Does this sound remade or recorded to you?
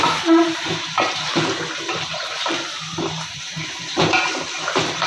remade